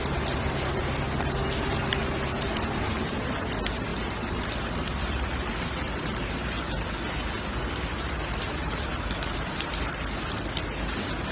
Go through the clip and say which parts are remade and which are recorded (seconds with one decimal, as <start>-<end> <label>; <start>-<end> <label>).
0.0-3.9 recorded; 3.9-6.3 remade; 6.3-8.6 recorded; 8.6-9.7 remade; 9.7-11.3 recorded